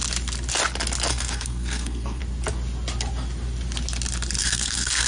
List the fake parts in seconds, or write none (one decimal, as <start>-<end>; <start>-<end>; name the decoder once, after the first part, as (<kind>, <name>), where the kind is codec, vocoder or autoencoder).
1.1-2.2 (codec, SNAC); 4.4-5.1